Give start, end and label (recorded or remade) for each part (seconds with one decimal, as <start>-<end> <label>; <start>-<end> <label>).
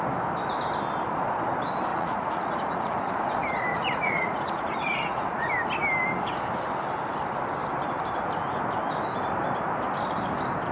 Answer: 0.0-1.9 recorded; 1.9-3.1 remade; 3.1-3.7 recorded; 3.7-5.5 remade; 5.5-10.7 recorded